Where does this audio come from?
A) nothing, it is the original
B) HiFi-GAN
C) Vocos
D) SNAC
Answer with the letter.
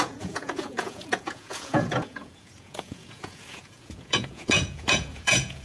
C